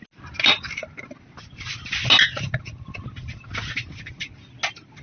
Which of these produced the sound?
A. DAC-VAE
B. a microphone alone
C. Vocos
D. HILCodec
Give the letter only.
B